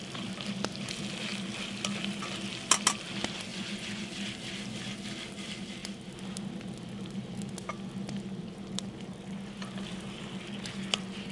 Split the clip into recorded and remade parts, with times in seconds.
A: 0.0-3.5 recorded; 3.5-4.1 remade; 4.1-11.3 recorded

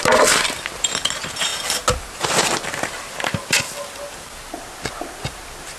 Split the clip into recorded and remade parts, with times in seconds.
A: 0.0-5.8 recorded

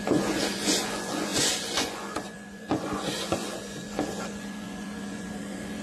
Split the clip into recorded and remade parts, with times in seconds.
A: 0.0-5.8 remade

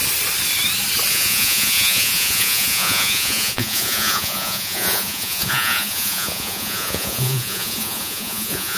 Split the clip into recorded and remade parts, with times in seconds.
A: 0.0-1.1 recorded; 1.1-8.8 remade